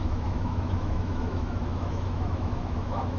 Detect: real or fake fake